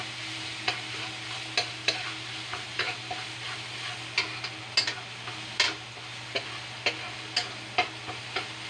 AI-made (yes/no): no